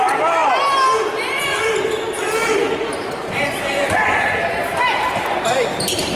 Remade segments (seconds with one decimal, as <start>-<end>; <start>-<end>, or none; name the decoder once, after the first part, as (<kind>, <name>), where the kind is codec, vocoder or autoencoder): 2.4-6.2 (vocoder, BigVGAN v2)